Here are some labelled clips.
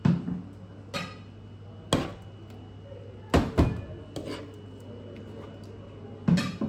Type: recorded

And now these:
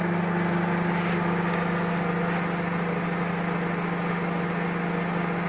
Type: recorded